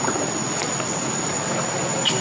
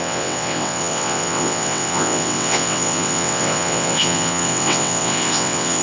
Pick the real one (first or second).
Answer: first